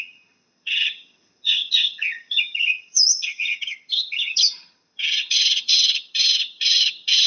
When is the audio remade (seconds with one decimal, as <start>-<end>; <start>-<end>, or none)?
0.0-7.3